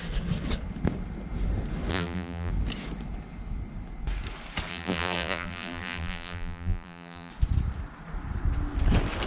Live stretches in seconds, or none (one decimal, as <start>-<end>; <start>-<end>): 0.0-1.9; 2.5-4.7; 7.3-9.3